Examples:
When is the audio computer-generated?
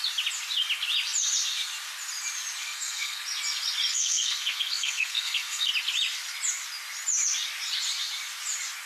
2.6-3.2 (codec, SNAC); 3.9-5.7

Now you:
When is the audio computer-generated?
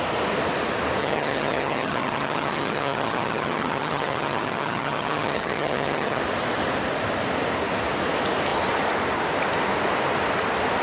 1.0-6.2 (vocoder, HiFi-GAN)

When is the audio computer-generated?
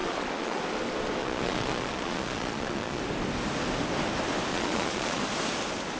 0.0-0.6 (vocoder, Vocos); 1.2-3.0; 4.5-5.2